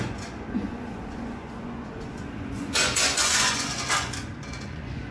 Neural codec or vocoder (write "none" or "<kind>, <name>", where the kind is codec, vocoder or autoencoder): vocoder, Vocos